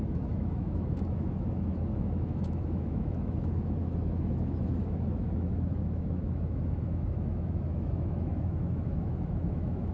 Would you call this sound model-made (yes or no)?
yes